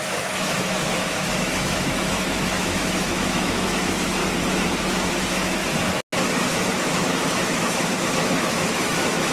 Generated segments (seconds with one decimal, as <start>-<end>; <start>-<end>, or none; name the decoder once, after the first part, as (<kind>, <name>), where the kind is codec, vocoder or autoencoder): 0.0-4.2 (autoencoder, DAC-VAE); 4.8-5.6; 6.2-9.3